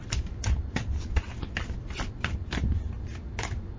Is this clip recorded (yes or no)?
yes